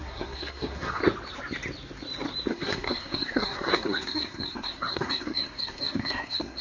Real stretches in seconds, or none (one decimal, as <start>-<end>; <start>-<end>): 1.0-2.5